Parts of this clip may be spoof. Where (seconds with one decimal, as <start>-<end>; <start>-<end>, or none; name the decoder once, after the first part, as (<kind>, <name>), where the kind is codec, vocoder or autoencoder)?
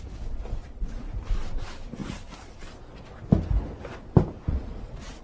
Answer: 0.6-1.1 (vocoder, Vocos); 4.5-5.2